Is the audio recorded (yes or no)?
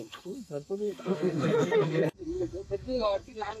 no